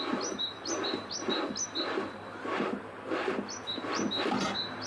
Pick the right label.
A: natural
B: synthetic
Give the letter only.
A